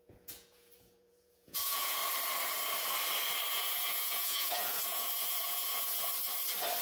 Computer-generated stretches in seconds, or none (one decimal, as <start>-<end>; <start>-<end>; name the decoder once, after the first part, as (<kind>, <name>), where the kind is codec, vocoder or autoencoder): 0.0-2.0 (vocoder, Vocos); 3.5-6.1